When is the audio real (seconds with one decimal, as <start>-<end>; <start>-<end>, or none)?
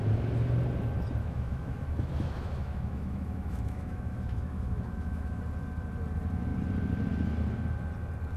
0.0-1.2; 5.4-8.4